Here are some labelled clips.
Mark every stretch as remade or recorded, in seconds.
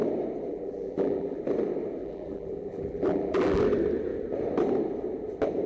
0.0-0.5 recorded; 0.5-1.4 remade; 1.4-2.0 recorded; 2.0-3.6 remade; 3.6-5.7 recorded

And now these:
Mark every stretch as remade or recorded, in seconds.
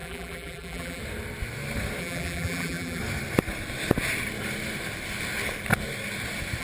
0.0-1.0 remade; 1.0-2.0 recorded; 2.0-3.0 remade; 3.0-6.6 recorded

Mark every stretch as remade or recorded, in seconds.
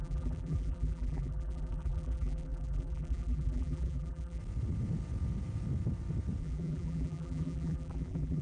0.0-4.4 remade; 4.4-6.4 recorded; 6.4-8.4 remade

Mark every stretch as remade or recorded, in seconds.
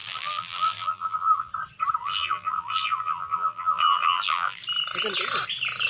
0.0-1.5 remade; 1.5-2.0 recorded; 2.0-4.6 remade; 4.6-5.9 recorded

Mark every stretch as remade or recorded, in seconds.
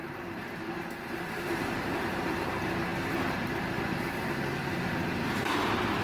0.0-6.0 remade